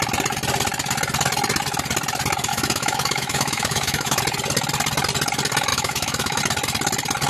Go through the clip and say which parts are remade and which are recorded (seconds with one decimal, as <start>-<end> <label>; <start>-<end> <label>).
0.0-2.5 recorded; 2.5-4.2 remade; 4.2-5.7 recorded; 5.7-6.4 remade; 6.4-7.3 recorded

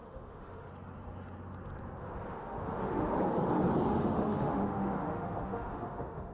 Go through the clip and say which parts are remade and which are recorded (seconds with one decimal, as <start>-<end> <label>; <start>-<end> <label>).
0.0-0.7 remade; 0.7-2.0 recorded; 2.0-3.2 remade; 3.2-3.9 recorded; 3.9-6.3 remade

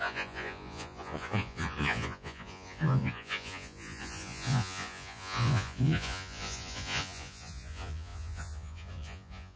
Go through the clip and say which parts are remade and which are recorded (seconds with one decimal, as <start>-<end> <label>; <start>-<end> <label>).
0.0-9.6 remade

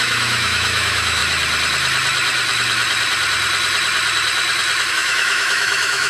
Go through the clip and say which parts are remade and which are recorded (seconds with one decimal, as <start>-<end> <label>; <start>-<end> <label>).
0.0-1.2 remade; 1.2-4.9 recorded; 4.9-6.1 remade